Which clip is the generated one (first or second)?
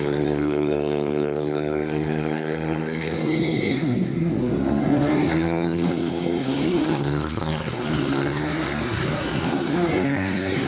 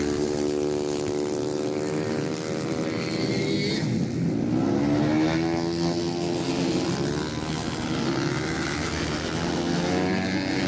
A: first